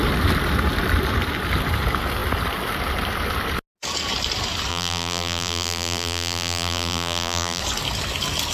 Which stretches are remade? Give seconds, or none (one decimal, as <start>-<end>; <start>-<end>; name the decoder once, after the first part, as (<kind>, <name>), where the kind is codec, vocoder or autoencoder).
4.7-7.6 (vocoder, BigVGAN v2)